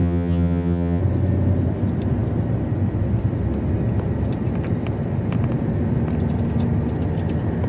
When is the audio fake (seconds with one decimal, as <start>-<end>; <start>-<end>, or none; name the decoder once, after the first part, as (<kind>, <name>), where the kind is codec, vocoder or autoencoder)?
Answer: 0.0-1.0 (vocoder, HiFi-GAN)